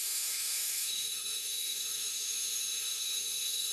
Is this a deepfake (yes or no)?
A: yes